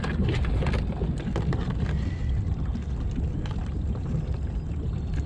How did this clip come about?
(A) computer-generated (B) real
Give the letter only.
B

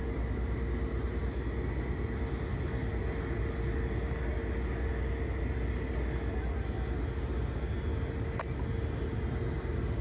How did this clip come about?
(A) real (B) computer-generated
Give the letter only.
A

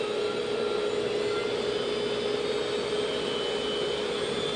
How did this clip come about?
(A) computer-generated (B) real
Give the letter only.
B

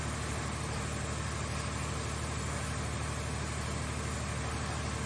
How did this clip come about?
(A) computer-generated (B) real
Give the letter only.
B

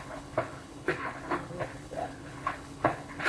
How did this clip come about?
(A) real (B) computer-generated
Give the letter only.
B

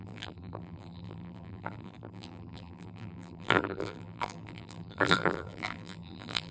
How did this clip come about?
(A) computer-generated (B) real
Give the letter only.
A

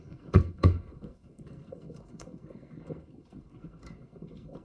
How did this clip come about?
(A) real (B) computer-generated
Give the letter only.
B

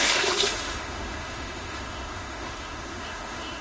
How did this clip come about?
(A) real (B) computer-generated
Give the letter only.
B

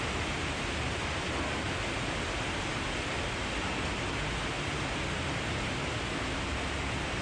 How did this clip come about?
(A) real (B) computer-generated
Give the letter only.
A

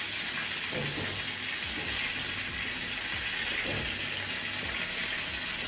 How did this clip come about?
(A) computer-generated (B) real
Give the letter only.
B